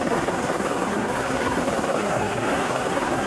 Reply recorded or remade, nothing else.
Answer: remade